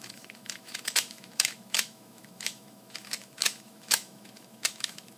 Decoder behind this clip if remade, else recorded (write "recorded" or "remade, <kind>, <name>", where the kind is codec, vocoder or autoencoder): remade, autoencoder, DAC-VAE